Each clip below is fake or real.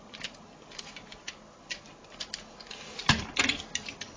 real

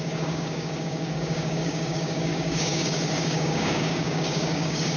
fake